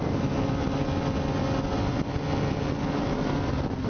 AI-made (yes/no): no